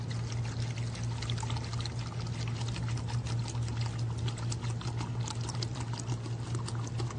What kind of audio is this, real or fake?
real